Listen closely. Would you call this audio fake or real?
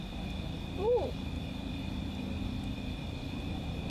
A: real